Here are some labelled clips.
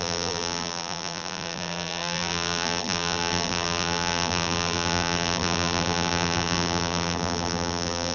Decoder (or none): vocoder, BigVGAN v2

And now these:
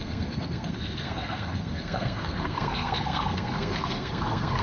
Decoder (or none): codec, SNAC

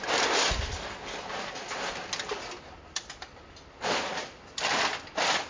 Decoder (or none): none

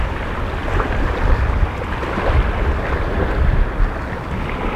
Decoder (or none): none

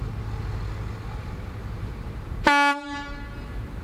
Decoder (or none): none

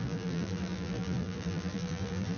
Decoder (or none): vocoder, BigVGAN v2